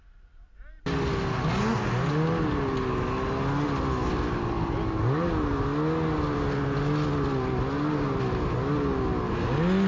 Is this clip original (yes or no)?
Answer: yes